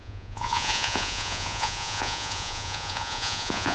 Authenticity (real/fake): fake